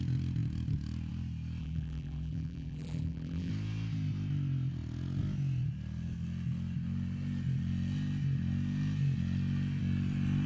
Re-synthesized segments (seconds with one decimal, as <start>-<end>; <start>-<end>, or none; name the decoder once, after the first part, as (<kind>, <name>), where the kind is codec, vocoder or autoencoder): 1.6-3.5 (vocoder, BigVGAN v2)